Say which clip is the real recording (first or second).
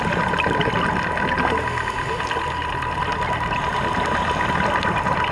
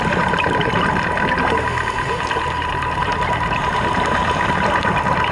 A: first